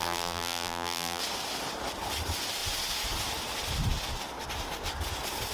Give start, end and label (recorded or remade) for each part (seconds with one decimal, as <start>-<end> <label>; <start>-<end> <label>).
0.0-1.2 remade; 1.2-5.5 recorded